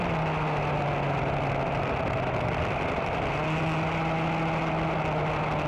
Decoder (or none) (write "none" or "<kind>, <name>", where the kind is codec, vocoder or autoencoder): none